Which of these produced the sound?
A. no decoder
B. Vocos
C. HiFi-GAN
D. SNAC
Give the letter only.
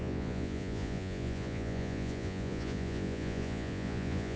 B